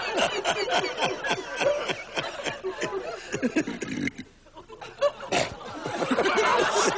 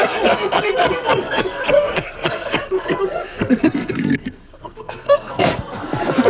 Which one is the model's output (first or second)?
second